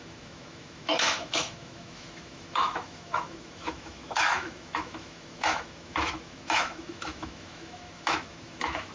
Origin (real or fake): fake